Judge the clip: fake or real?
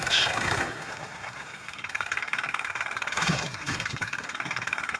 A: fake